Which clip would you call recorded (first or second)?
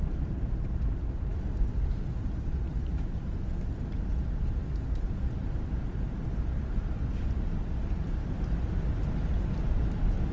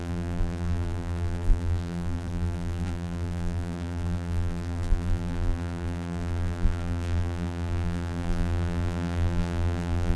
first